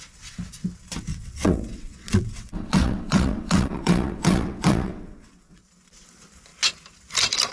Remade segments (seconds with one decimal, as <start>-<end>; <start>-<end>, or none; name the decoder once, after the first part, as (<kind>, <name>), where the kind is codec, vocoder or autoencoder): 1.1-5.6 (vocoder, WaveNeXt)

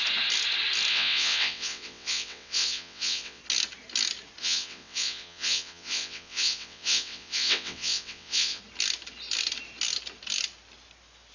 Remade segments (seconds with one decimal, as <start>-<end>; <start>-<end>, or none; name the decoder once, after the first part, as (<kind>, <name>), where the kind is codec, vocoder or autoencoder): 0.9-3.4 (vocoder, WaveNeXt); 4.4-8.6

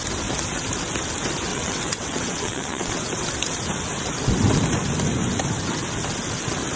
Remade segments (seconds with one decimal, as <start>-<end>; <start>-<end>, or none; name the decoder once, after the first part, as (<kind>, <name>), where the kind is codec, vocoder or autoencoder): 1.5-2.9 (vocoder, WaveNeXt)

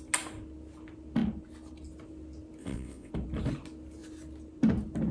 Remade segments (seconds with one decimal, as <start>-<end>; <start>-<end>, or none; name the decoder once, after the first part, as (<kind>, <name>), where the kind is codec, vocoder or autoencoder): 2.6-3.1 (vocoder, WaveNeXt)